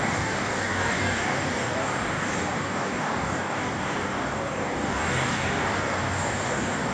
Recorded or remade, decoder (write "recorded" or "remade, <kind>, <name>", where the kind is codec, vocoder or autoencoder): remade, codec, DAC